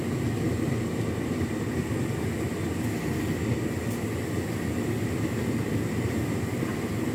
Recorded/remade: recorded